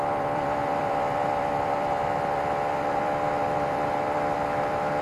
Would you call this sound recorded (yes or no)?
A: no